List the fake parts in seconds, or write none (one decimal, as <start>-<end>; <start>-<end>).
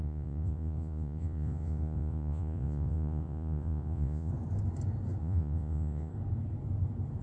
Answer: 0.0-4.3; 5.2-6.1